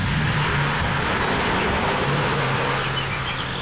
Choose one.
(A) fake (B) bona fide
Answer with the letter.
B